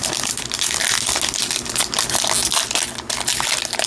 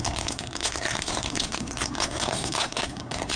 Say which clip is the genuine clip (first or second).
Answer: first